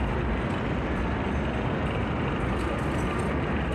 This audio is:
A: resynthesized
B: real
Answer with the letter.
B